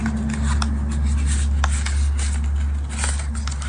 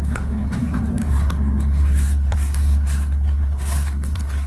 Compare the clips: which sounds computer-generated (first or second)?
second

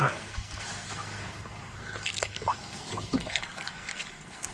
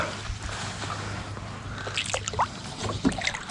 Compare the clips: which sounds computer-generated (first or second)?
first